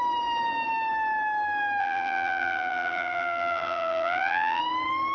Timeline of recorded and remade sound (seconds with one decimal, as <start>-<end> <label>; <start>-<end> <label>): 0.0-1.8 recorded; 1.8-4.6 remade; 4.6-5.1 recorded